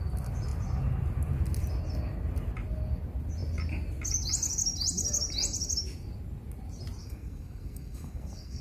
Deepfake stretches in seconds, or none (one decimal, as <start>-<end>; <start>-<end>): 7.0-8.6